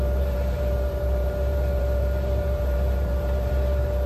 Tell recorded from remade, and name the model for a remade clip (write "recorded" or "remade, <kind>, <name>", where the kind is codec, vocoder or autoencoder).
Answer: remade, vocoder, BigVGAN v2